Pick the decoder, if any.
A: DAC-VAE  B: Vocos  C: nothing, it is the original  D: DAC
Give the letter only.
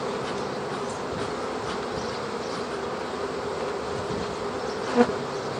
C